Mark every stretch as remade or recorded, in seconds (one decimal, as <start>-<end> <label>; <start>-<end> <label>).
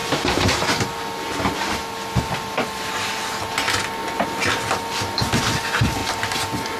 0.0-6.8 recorded